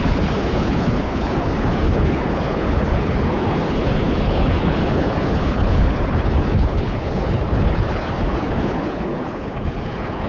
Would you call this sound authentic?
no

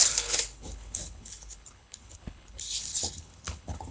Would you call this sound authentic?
no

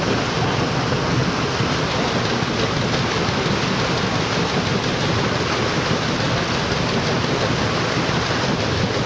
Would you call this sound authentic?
yes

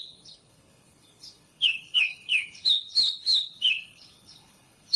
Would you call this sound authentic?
no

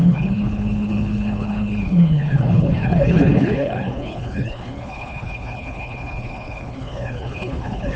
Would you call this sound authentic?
no